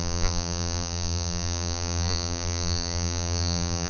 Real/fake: fake